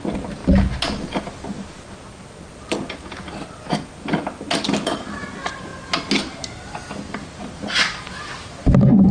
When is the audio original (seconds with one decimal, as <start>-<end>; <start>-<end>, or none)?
0.0-9.1